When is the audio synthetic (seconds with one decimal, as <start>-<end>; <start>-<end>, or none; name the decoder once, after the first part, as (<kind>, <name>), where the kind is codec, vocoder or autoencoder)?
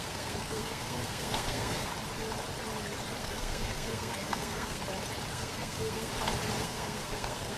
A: 0.0-1.9 (codec, SNAC); 3.2-4.8; 5.3-6.1; 6.6-7.6